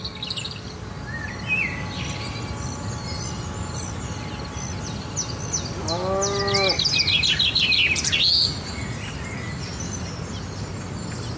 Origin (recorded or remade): recorded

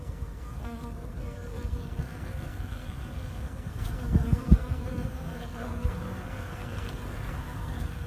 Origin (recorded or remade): remade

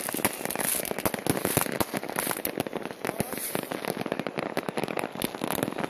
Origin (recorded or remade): recorded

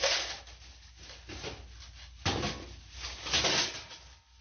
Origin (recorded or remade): recorded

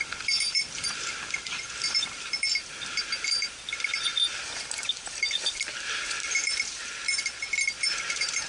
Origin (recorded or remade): remade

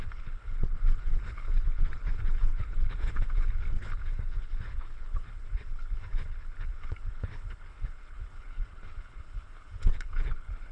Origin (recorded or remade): remade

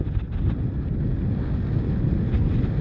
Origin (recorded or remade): recorded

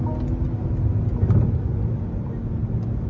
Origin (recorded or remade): recorded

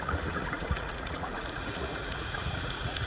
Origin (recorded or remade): remade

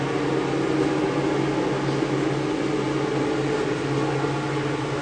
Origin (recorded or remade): recorded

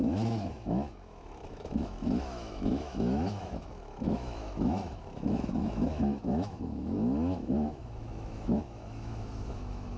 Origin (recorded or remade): remade